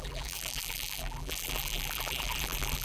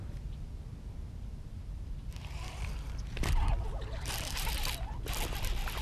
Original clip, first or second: second